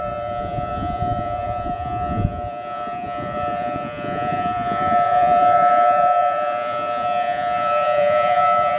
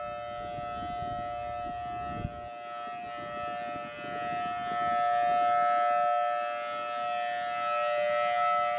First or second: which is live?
second